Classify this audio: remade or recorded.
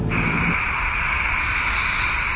recorded